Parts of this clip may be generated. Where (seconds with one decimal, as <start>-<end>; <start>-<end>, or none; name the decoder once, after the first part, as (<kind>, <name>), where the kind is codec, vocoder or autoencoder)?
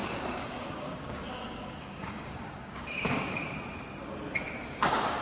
0.0-3.4 (codec, DAC); 4.6-5.2